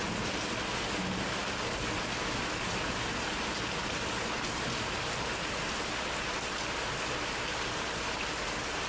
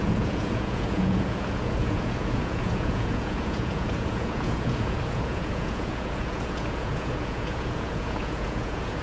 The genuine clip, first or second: first